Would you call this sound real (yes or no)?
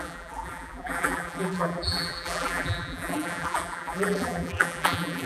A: no